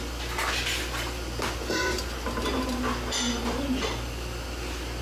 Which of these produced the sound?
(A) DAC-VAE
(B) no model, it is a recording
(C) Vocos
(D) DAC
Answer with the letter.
B